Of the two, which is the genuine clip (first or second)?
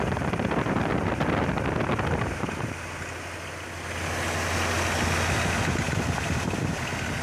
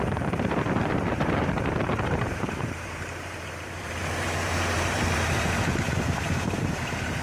first